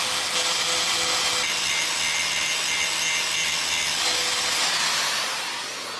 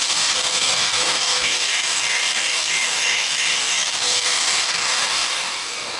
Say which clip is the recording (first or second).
first